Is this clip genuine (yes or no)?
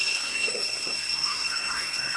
no